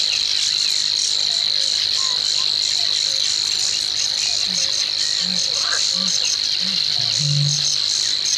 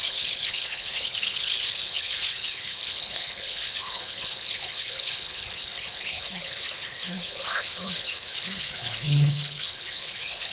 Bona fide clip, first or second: first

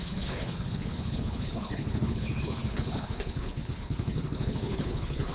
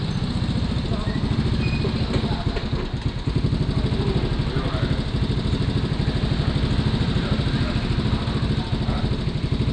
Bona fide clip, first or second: second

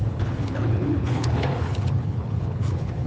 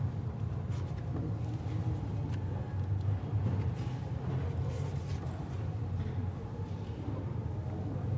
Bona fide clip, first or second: second